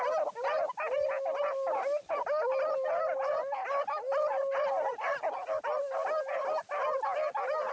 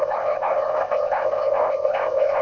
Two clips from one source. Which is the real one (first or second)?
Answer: first